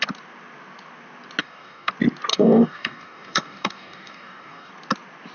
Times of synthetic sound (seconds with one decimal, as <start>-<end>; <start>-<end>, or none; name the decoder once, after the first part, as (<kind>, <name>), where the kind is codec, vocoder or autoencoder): 1.4-1.9 (codec, DAC); 2.3-4.7